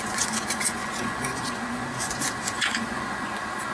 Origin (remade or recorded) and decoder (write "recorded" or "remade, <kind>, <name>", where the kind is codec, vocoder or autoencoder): remade, vocoder, Vocos